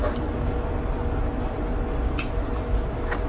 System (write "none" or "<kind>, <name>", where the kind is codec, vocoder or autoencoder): none